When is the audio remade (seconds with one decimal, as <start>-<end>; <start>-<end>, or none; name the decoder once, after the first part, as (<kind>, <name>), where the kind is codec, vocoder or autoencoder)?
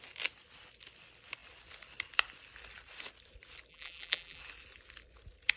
3.7-4.4 (vocoder, BigVGAN v2)